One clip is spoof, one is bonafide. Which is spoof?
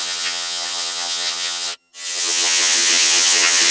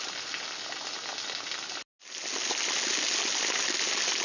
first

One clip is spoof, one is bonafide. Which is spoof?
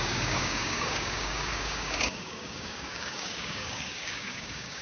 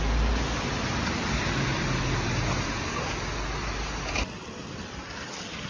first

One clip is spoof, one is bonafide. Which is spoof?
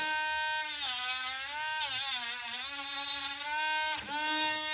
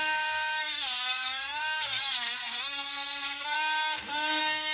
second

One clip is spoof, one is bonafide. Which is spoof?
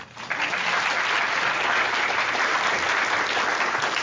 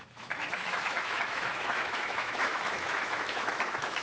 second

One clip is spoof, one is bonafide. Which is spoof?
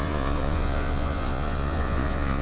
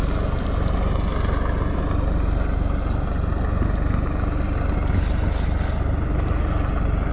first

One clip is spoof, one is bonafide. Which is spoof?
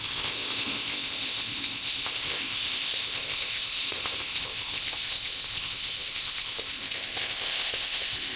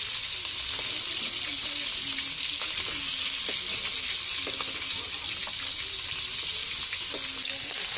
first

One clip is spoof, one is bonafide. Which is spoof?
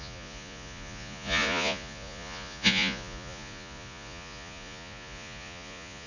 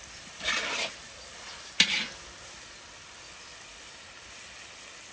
first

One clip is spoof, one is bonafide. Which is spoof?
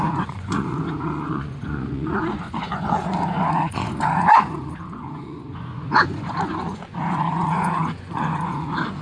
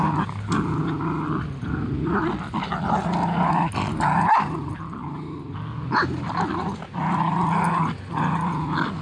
first